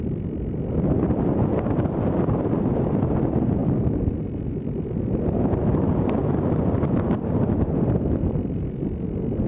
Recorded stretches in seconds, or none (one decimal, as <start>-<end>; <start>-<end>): 0.0-3.6; 4.2-9.5